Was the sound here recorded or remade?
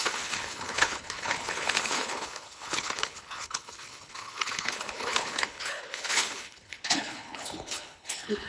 remade